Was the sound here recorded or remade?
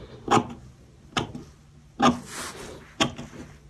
recorded